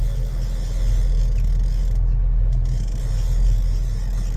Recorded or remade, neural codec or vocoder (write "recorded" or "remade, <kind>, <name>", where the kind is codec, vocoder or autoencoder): recorded